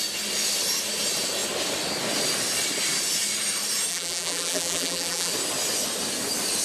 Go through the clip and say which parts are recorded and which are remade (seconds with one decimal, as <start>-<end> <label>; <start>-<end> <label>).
0.0-3.9 recorded; 3.9-5.3 remade; 5.3-6.6 recorded